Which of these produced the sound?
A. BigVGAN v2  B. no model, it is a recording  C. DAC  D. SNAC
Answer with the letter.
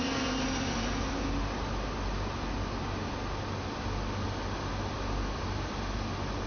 B